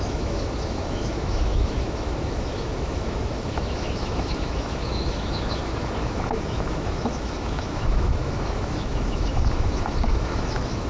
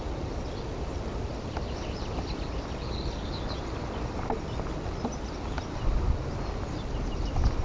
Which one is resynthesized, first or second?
first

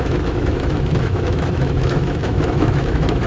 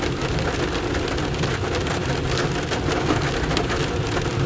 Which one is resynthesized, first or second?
first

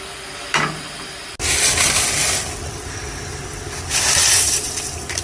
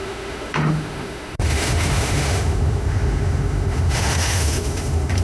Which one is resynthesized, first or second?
second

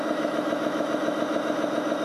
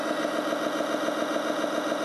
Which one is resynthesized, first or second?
first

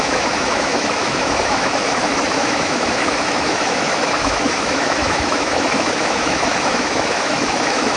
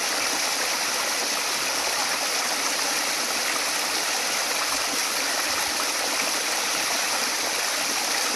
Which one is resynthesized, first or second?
first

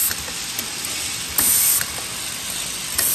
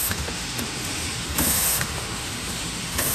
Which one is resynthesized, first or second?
second